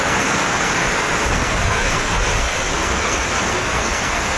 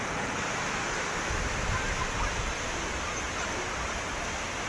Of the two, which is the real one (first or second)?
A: second